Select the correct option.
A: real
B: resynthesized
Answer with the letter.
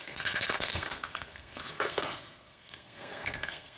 B